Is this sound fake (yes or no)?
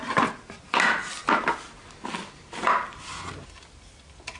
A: no